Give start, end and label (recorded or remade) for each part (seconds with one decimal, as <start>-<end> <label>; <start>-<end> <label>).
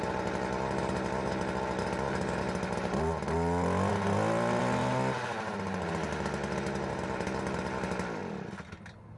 0.0-9.2 recorded